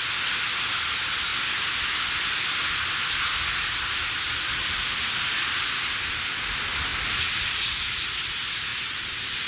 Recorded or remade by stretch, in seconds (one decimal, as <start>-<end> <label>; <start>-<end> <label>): 0.0-8.7 recorded; 8.7-9.5 remade